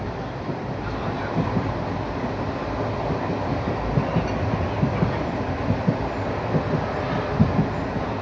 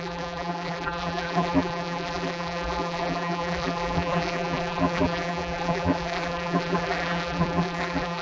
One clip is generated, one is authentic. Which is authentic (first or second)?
first